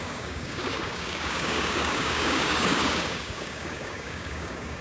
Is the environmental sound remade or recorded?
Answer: remade